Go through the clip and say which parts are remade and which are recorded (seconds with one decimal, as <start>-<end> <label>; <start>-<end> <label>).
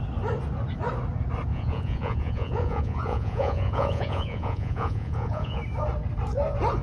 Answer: 0.0-1.5 recorded; 1.5-5.6 remade; 5.6-6.8 recorded